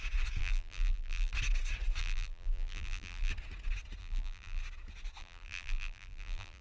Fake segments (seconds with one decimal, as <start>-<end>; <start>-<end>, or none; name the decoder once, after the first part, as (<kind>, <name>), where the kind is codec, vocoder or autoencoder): 0.4-1.3 (vocoder, BigVGAN v2); 2.0-3.3; 4.0-4.6; 5.2-6.6